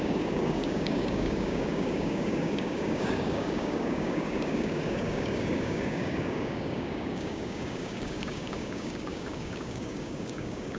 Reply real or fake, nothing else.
fake